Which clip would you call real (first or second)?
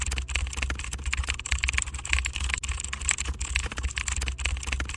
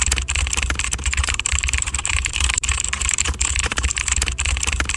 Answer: first